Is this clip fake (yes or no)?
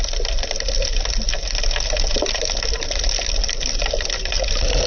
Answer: no